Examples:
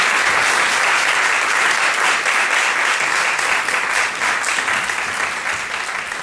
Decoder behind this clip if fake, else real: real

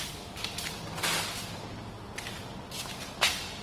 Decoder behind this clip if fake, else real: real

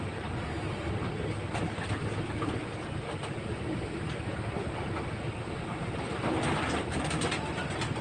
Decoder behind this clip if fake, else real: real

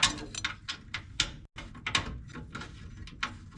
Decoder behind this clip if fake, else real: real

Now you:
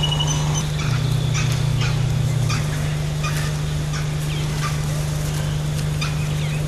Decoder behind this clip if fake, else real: real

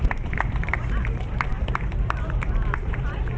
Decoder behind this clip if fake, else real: fake, vocoder, BigVGAN v2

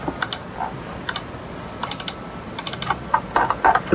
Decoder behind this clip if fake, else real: real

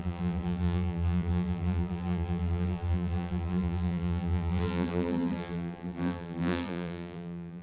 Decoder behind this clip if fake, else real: fake, vocoder, BigVGAN v2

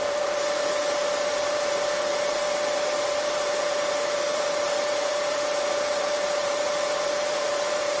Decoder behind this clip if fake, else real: fake, vocoder, BigVGAN v2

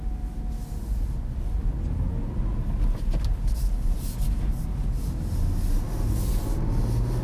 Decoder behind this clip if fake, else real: real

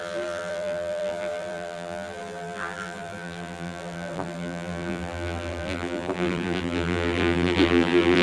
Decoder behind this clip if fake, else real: fake, vocoder, BigVGAN v2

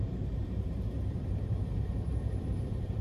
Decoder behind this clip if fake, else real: fake, vocoder, BigVGAN v2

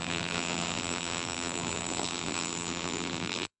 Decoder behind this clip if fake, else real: fake, vocoder, BigVGAN v2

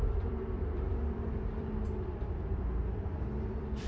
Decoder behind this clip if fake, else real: fake, vocoder, BigVGAN v2